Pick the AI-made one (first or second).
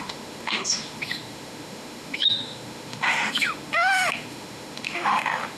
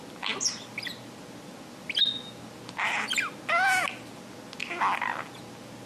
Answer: first